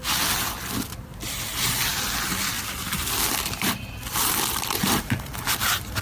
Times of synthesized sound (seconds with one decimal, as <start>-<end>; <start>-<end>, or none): 0.0-1.9; 3.6-6.0